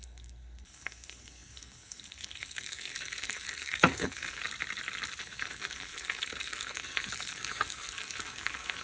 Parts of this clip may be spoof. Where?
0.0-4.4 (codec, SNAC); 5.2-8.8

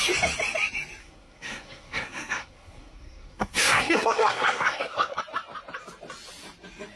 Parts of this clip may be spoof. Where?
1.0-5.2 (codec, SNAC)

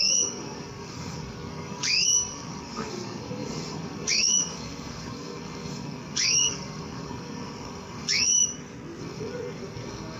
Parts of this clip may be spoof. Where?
0.0-8.4 (codec, SNAC); 9.0-10.2

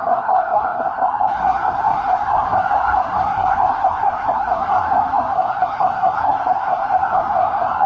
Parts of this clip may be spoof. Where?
0.0-7.9 (codec, SNAC)